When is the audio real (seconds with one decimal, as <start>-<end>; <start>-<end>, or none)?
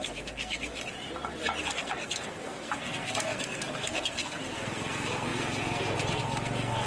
0.7-1.6